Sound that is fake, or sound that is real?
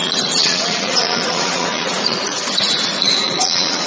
fake